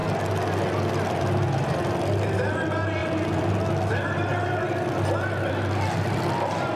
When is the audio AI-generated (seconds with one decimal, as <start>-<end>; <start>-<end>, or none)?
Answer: none